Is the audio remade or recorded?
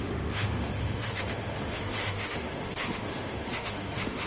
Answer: remade